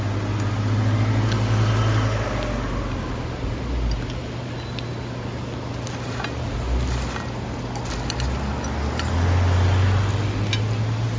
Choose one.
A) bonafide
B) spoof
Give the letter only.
A